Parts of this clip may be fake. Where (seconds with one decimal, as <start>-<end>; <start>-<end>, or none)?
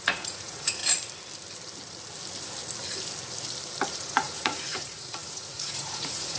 0.0-0.8; 3.9-6.4